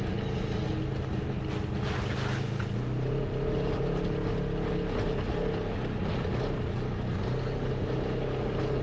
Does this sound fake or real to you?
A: real